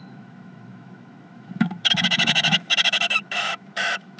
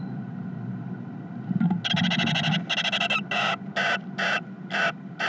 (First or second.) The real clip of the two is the second